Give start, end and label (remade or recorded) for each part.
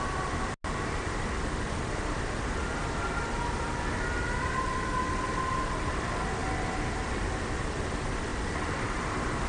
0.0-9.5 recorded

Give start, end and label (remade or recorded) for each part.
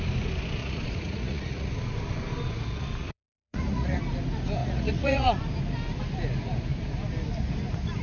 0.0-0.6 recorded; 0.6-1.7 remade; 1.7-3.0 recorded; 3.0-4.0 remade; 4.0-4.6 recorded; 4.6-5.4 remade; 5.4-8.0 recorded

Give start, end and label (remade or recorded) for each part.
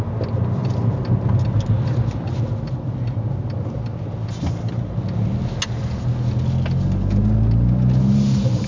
0.0-8.7 recorded